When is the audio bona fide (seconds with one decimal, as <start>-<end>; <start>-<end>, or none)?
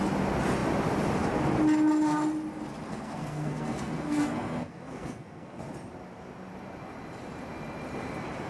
0.0-2.9; 5.6-8.5